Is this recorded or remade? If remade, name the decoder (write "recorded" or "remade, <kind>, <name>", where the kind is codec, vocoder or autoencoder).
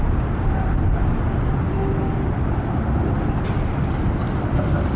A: recorded